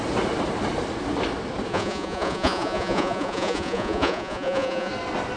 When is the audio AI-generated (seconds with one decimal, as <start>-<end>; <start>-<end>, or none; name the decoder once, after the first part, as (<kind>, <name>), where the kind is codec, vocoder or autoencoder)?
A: 1.7-4.9 (vocoder, Vocos)